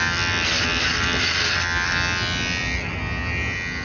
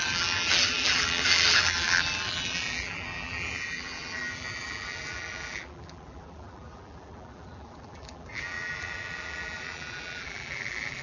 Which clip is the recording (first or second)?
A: first